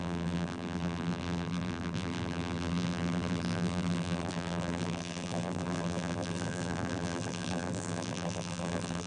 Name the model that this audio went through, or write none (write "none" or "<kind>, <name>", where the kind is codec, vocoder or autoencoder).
vocoder, BigVGAN v2